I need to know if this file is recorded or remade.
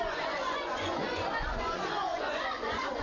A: remade